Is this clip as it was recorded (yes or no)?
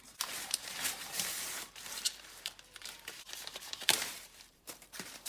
no